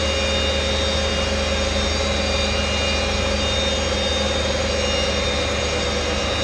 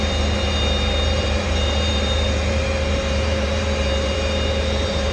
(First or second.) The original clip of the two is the first